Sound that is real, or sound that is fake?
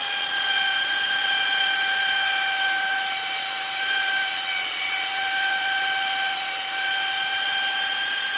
fake